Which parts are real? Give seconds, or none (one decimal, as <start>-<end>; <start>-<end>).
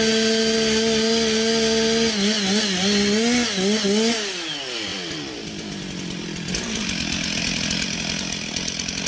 0.0-9.1